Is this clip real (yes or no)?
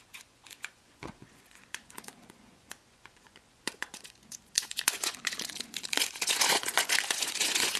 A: no